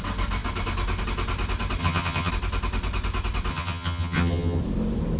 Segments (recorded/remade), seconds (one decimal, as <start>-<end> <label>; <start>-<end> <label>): 0.0-1.8 recorded; 1.8-2.3 remade; 2.3-3.5 recorded; 3.5-4.6 remade; 4.6-5.2 recorded